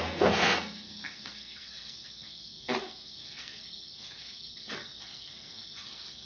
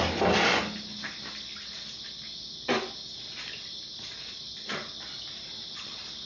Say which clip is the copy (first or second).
first